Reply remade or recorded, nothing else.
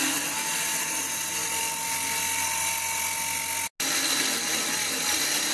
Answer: recorded